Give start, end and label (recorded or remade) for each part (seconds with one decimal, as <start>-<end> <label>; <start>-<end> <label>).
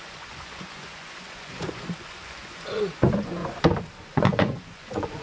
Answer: 0.0-3.4 remade; 3.4-4.0 recorded; 4.0-5.2 remade